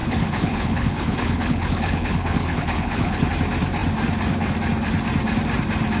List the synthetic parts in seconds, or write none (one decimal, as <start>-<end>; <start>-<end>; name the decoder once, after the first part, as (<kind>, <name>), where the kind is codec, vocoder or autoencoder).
0.0-3.3 (codec, HILCodec)